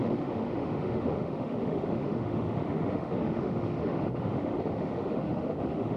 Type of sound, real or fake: fake